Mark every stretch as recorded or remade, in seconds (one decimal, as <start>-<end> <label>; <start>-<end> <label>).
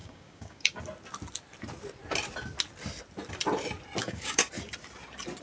0.0-0.8 remade; 0.8-4.0 recorded; 4.0-4.5 remade; 4.5-5.4 recorded